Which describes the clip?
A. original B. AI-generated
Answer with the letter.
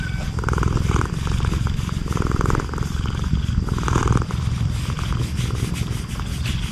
A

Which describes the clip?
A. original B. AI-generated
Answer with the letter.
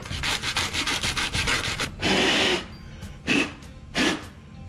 A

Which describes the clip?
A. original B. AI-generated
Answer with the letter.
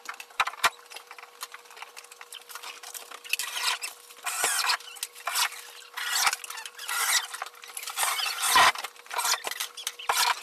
A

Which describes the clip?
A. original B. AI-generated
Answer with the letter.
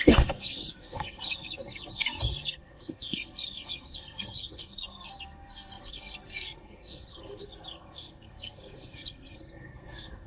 B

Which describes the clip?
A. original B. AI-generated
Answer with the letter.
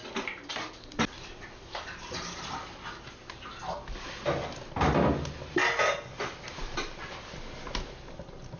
A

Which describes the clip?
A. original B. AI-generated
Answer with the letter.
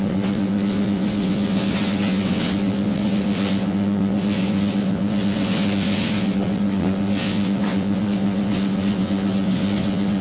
B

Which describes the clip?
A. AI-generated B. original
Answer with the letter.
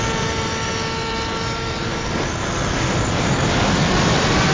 B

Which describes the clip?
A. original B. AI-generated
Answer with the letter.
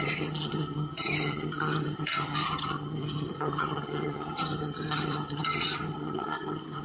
B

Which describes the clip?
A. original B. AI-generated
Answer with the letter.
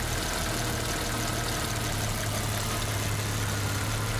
A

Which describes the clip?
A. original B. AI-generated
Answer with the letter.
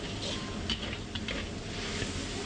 A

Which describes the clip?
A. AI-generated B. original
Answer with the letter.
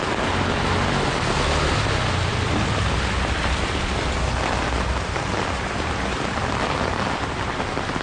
B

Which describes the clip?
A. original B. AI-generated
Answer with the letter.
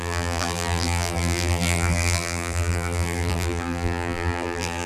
B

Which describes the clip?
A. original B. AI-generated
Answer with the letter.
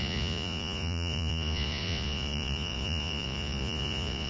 B